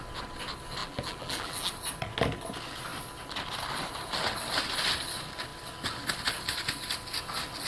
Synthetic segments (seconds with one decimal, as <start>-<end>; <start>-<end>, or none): 0.8-1.7